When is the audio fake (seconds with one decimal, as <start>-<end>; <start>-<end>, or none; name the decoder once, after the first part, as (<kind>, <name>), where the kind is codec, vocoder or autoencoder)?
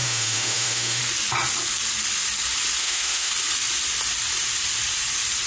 0.0-1.0 (autoencoder, DAC-VAE); 2.8-3.3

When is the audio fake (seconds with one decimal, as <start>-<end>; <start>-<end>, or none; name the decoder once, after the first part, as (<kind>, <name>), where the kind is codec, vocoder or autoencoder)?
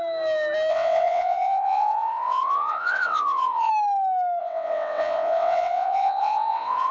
0.7-3.7 (vocoder, WaveNeXt); 4.4-6.9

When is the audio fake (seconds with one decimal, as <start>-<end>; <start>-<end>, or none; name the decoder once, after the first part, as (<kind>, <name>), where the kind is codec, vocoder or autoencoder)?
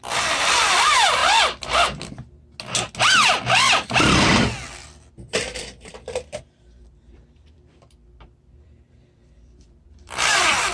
0.0-1.2 (vocoder, BigVGAN v2); 5.1-10.7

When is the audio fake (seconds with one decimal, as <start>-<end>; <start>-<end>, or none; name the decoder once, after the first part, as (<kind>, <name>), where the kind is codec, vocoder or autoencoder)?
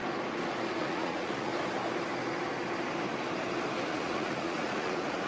0.8-1.5 (vocoder, Vocos); 3.9-5.3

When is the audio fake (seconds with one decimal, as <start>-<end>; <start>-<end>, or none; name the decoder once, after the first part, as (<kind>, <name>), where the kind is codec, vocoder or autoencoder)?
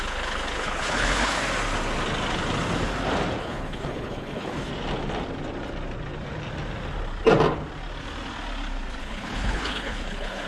0.0-1.4 (codec, HILCodec); 3.4-4.7; 9.0-10.5